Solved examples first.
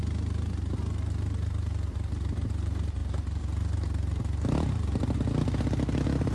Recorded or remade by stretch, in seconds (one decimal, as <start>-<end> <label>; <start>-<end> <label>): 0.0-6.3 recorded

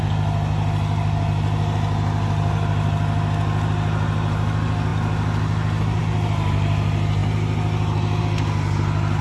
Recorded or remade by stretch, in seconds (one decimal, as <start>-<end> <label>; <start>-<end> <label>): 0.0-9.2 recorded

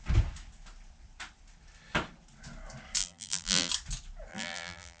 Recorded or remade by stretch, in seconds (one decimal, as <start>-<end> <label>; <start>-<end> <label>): 0.0-3.0 recorded; 3.0-3.7 remade; 3.7-4.3 recorded; 4.3-5.0 remade